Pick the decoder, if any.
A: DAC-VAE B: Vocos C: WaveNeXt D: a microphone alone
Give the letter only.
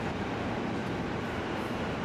D